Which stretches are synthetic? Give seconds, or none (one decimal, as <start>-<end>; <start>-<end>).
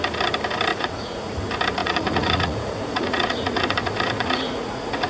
0.7-1.4; 1.8-5.1